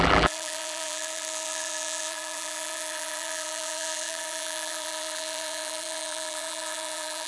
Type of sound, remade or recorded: remade